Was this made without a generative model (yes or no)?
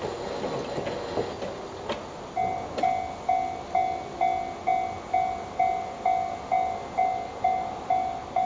yes